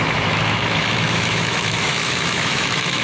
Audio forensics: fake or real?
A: fake